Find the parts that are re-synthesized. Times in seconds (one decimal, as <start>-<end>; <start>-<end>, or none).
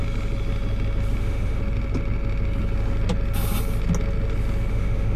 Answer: 1.2-1.6; 4.7-5.2